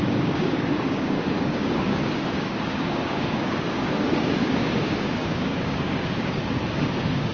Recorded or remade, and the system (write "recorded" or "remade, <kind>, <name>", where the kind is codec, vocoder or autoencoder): remade, codec, DAC